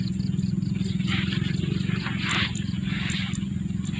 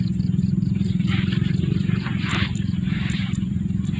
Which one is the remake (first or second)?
second